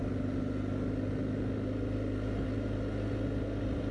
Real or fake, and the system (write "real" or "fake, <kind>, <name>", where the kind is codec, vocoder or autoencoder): real